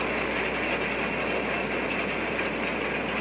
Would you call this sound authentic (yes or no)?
yes